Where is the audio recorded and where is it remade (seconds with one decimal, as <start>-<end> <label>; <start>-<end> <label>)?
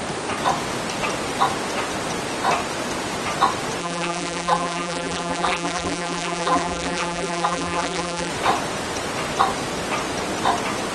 0.0-3.8 recorded; 3.8-8.3 remade; 8.3-10.9 recorded